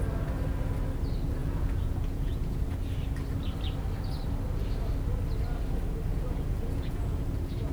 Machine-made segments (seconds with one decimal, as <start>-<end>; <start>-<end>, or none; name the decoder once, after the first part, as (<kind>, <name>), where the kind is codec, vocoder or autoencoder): 1.4-2.8 (vocoder, Vocos); 6.1-7.7